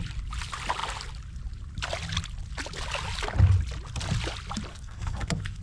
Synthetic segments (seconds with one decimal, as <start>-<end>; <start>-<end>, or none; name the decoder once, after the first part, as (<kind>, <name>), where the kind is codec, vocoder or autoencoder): 4.7-5.6 (codec, SNAC)